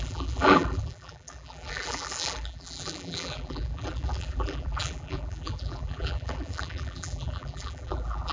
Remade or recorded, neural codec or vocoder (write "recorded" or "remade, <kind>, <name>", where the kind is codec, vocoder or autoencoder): remade, vocoder, BigVGAN v2